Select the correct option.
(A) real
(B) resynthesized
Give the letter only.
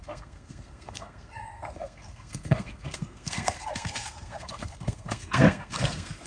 B